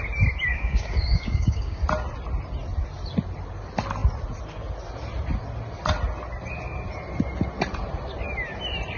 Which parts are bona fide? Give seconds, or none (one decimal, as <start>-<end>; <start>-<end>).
0.0-0.5; 1.8-9.0